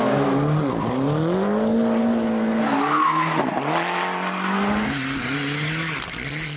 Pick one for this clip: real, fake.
real